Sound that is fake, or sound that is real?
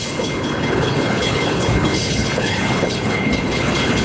fake